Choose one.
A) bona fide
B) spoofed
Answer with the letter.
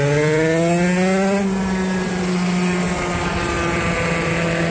A